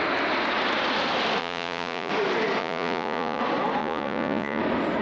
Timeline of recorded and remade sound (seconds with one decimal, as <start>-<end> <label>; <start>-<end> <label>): 0.0-1.4 recorded; 1.4-2.1 remade; 2.1-2.6 recorded; 2.6-3.4 remade; 3.4-3.8 recorded; 3.8-4.6 remade; 4.6-5.0 recorded